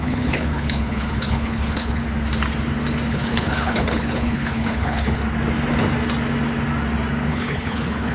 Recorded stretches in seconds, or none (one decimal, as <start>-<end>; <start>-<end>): 2.0-3.1; 5.2-7.3